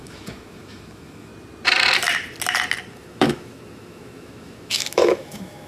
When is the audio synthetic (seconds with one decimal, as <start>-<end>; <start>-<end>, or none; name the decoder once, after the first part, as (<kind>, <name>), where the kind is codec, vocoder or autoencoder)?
0.0-1.3 (autoencoder, DAC-VAE); 2.9-5.7